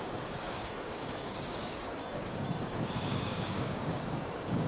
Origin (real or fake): fake